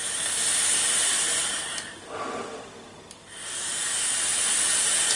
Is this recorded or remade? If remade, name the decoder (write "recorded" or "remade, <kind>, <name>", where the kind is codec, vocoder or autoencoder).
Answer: recorded